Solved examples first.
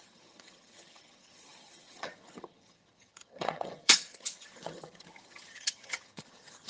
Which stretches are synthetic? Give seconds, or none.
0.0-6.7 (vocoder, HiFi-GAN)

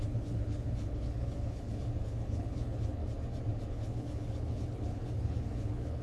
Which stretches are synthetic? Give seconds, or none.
0.0-3.0 (codec, HILCodec); 3.7-6.0